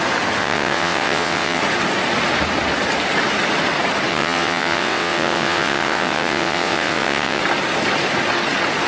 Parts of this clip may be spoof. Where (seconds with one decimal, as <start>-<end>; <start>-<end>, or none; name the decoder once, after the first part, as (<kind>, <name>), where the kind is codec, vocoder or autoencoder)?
0.4-1.6 (vocoder, WaveNeXt); 4.1-7.4